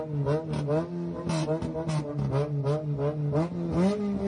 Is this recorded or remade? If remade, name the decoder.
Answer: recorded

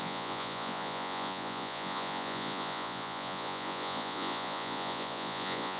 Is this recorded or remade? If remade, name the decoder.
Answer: remade, vocoder, Vocos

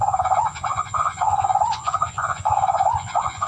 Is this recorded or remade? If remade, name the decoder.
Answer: remade, vocoder, Vocos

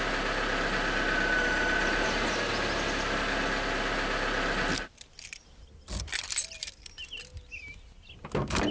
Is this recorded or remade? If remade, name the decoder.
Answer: recorded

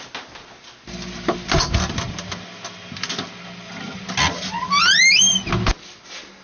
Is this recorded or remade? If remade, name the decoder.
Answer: recorded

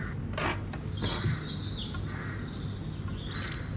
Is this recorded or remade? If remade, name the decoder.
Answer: recorded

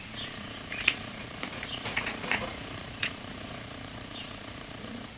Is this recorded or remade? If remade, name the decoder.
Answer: remade, vocoder, Vocos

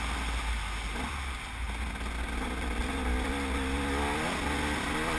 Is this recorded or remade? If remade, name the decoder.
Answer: recorded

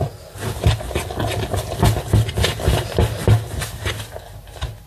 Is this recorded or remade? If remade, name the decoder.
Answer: recorded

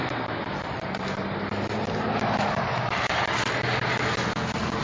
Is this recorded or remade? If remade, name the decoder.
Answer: recorded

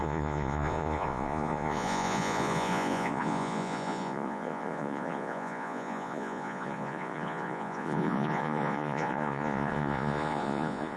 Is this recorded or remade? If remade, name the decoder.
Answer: remade, vocoder, Vocos